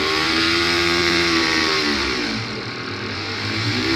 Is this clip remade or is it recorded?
remade